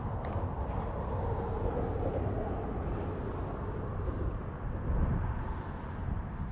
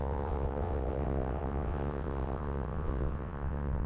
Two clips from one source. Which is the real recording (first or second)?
first